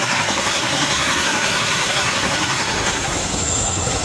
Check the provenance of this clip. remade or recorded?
remade